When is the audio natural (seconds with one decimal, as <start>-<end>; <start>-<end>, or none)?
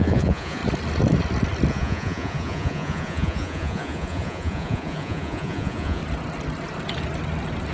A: 0.6-1.7; 6.0-7.7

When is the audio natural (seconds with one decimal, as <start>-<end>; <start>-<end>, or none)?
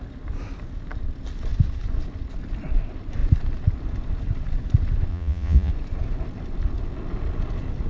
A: 0.0-5.1; 5.7-7.9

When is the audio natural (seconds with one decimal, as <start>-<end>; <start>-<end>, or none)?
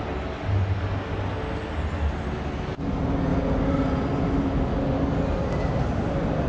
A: 0.0-6.5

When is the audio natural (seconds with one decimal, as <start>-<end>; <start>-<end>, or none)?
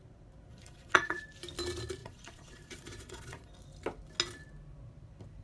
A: 0.0-0.5; 1.2-2.0; 3.5-5.4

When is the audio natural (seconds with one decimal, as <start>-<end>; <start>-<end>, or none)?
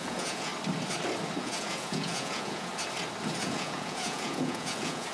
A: 0.5-1.4; 2.7-3.4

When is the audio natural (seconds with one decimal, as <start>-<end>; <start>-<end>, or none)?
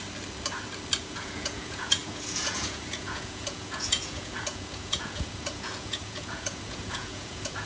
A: 0.0-1.0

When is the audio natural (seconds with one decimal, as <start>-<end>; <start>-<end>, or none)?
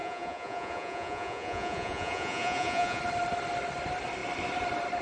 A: 3.0-5.0